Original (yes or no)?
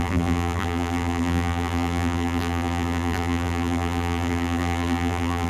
no